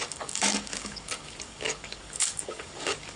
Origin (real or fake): fake